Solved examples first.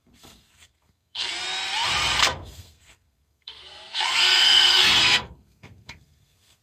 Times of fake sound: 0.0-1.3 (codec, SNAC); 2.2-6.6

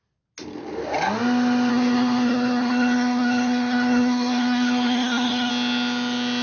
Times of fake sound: 1.7-5.5 (codec, SNAC)

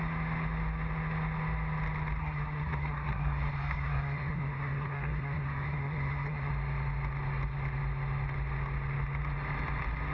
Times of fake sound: 2.2-6.5 (codec, SNAC)

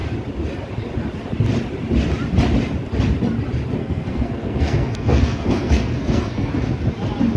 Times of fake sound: 3.8-6.5 (codec, SNAC)

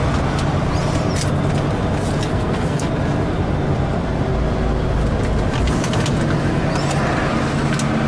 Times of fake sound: 2.3-2.9 (codec, SNAC)

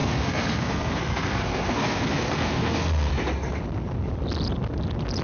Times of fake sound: 0.0-3.1 (codec, SNAC)

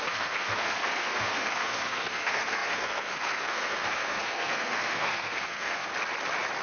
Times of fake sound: 0.0-5.9 (codec, SNAC)

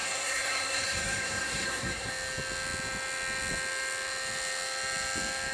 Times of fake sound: 0.0-2.1 (codec, SNAC)